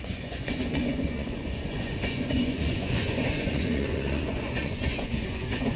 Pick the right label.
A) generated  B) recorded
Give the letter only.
A